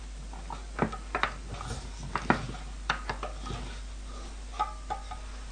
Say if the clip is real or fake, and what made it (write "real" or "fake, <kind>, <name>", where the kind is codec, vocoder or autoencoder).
real